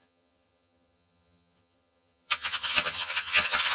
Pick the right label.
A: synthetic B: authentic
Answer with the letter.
A